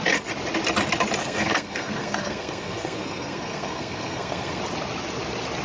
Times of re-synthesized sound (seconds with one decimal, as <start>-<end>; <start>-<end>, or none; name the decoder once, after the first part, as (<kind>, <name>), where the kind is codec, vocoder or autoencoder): 1.2-4.6 (codec, SNAC)